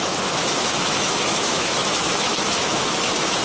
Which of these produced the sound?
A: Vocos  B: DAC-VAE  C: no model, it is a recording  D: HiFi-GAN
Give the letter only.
B